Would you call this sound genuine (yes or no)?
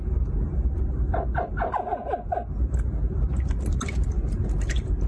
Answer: yes